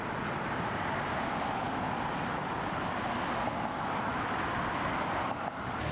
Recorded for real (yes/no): yes